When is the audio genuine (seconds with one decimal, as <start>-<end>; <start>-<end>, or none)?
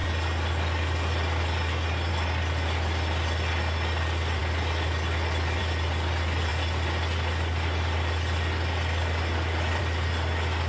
0.0-10.7